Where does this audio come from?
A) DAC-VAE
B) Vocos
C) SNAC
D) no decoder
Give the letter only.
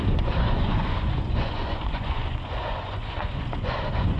B